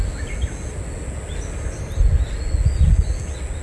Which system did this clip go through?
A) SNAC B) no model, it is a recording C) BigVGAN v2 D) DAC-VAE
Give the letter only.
B